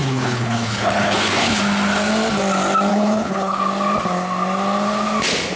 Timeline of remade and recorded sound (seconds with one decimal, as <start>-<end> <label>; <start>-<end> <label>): 0.0-1.6 remade; 1.6-2.9 recorded; 2.9-3.6 remade; 3.6-5.6 recorded